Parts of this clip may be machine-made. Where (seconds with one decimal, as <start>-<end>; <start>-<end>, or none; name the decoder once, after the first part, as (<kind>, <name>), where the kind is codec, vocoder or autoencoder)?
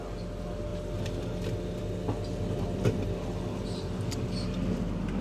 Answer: none